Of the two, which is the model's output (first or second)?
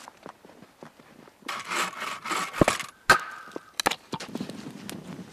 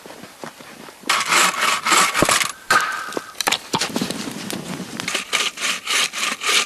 second